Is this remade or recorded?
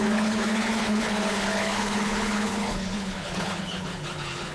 remade